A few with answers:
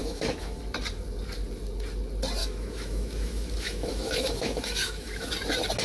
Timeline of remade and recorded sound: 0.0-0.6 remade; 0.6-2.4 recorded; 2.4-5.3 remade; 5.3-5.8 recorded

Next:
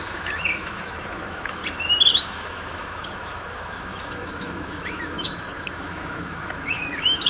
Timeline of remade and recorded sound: 0.0-1.6 remade; 1.6-2.2 recorded; 2.2-7.3 remade

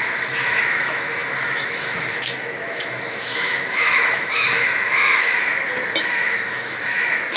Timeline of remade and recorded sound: 0.0-5.5 remade; 5.5-6.0 recorded; 6.0-7.4 remade

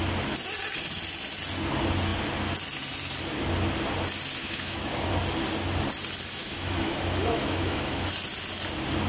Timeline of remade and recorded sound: 0.0-4.4 recorded; 4.4-5.1 remade; 5.1-6.4 recorded; 6.4-8.1 remade; 8.1-9.1 recorded

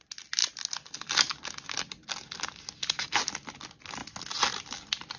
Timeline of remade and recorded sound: 0.0-5.2 recorded

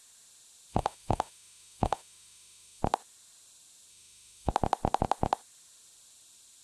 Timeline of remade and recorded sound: 0.0-0.7 recorded; 0.7-2.8 remade; 2.8-3.9 recorded; 3.9-4.5 remade; 4.5-6.6 recorded

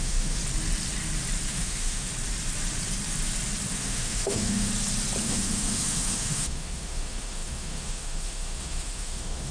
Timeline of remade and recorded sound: 0.0-0.4 remade; 0.4-1.5 recorded; 1.5-2.1 remade; 2.1-3.7 recorded; 3.7-4.7 remade; 4.7-5.2 recorded; 5.2-9.5 remade